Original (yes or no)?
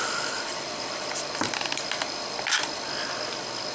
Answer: yes